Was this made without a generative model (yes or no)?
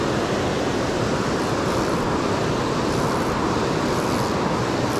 yes